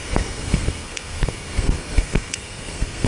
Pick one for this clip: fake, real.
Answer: fake